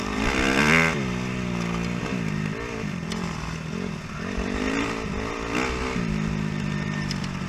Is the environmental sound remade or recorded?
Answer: recorded